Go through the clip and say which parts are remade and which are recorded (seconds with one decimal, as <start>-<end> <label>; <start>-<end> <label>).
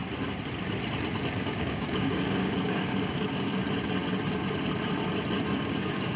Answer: 0.0-1.4 recorded; 1.4-3.6 remade; 3.6-5.5 recorded; 5.5-6.2 remade